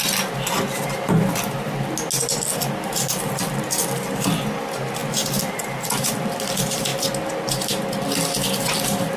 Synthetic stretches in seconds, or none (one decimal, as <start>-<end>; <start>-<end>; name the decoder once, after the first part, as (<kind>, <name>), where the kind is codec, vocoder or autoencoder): 5.0-6.3 (vocoder, BigVGAN v2)